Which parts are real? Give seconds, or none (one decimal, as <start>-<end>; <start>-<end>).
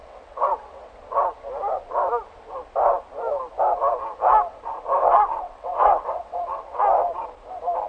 0.9-5.0; 6.8-7.9